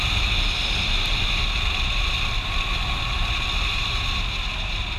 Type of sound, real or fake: real